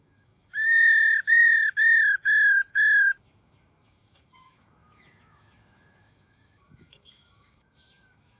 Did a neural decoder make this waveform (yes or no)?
yes